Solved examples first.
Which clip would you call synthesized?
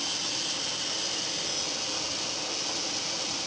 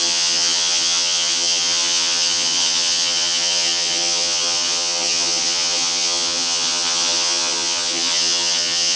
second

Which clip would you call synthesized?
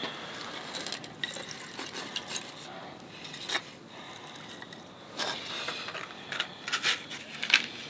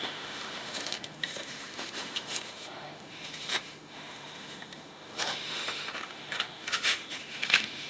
second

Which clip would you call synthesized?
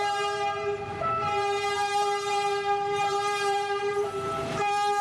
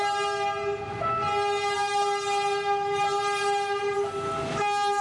first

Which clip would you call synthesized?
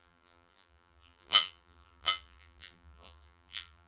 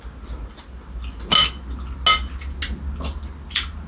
first